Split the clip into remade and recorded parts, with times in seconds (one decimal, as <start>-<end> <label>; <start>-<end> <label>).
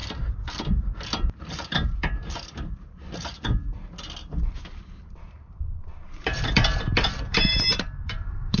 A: 0.0-1.5 recorded; 1.5-3.7 remade; 3.7-4.5 recorded; 4.5-8.6 remade